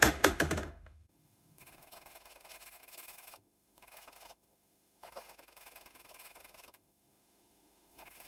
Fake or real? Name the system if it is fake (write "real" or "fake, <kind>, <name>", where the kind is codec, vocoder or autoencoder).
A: fake, autoencoder, DAC-VAE